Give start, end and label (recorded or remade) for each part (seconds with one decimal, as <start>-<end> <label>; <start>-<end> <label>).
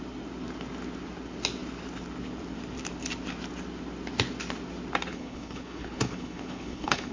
0.0-5.1 recorded; 5.1-7.1 remade